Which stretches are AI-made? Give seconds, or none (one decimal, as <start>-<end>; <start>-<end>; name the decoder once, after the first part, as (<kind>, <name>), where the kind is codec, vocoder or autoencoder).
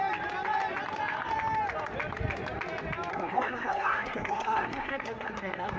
3.1-5.8 (codec, SNAC)